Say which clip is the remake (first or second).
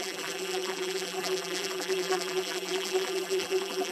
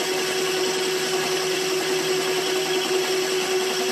first